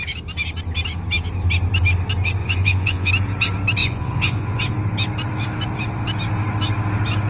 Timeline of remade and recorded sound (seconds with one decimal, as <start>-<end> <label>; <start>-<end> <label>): 0.0-2.4 recorded; 2.4-3.1 remade; 3.1-3.8 recorded; 3.8-4.6 remade; 4.6-7.3 recorded